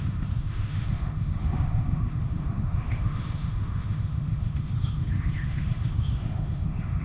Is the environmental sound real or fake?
fake